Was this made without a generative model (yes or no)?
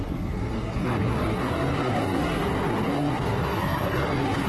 no